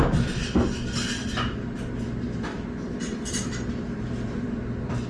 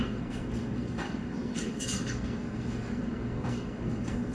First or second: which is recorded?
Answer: first